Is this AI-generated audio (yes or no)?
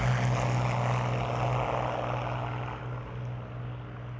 no